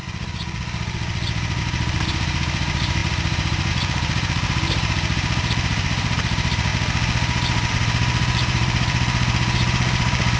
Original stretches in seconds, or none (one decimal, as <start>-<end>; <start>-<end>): 0.0-1.6; 6.7-7.7

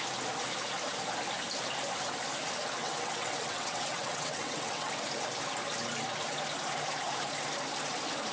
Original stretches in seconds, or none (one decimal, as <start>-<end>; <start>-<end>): 0.0-2.8; 4.9-8.3

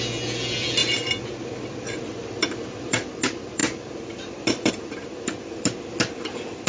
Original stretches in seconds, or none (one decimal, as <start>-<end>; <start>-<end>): 0.0-0.8; 3.1-3.6; 4.7-6.7